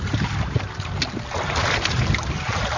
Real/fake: real